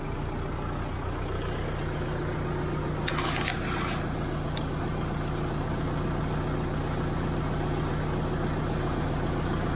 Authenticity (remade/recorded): recorded